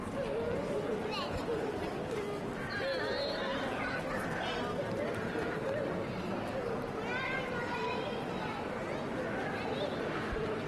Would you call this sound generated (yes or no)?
no